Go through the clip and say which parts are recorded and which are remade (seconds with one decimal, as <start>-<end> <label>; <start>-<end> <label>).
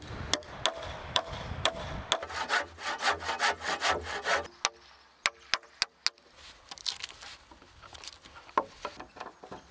0.0-1.0 recorded; 1.0-1.8 remade; 1.8-9.7 recorded